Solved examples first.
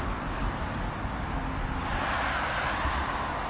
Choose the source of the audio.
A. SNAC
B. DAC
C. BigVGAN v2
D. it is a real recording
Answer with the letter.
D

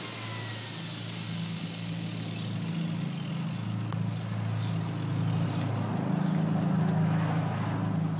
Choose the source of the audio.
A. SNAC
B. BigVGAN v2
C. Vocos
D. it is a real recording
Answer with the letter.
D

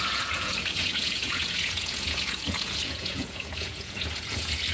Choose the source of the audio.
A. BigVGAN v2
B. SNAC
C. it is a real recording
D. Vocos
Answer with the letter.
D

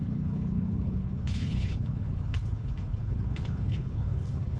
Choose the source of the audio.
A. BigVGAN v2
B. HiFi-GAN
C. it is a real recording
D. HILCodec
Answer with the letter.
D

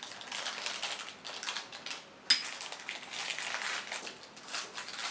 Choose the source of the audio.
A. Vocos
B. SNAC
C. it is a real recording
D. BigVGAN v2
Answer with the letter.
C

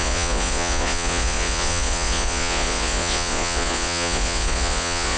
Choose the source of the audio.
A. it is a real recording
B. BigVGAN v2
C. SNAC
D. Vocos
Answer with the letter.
D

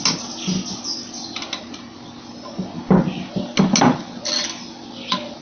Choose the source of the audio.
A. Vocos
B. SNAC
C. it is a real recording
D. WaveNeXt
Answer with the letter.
C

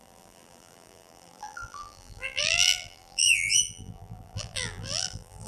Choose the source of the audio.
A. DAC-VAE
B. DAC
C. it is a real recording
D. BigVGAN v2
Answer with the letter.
D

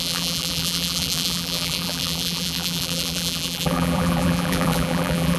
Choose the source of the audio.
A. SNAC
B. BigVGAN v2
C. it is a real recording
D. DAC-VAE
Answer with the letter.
B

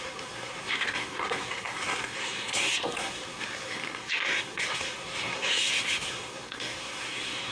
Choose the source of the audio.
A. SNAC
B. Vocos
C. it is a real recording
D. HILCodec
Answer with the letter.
A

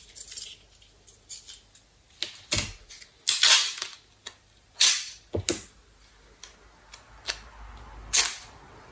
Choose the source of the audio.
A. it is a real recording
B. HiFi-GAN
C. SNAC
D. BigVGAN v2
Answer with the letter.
A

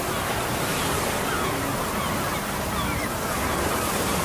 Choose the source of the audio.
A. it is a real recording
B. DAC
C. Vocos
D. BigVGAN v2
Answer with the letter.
A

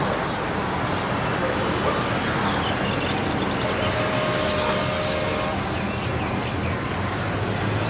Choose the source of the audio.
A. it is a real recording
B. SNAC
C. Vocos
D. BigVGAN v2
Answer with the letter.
A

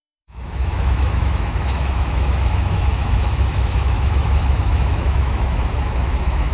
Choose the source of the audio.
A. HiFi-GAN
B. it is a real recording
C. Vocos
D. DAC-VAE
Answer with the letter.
D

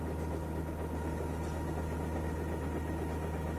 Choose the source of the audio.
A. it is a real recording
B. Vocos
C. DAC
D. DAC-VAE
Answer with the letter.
A